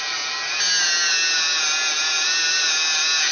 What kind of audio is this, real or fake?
real